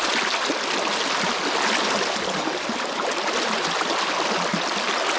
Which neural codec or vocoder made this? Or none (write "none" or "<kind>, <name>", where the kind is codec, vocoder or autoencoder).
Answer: none